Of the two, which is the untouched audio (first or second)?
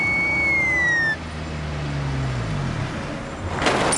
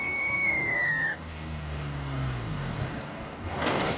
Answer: first